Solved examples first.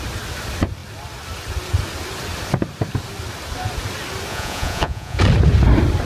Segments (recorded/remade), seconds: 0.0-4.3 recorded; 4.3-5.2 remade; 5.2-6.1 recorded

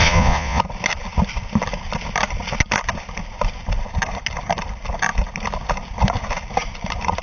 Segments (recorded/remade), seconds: 0.0-0.6 remade; 0.6-7.2 recorded